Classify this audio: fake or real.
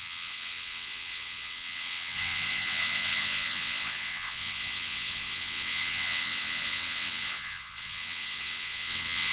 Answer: fake